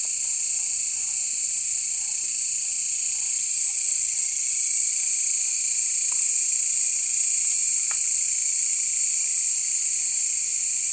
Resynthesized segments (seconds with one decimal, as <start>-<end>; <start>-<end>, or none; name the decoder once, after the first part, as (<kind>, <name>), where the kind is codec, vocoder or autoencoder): 3.5-4.9 (vocoder, Vocos)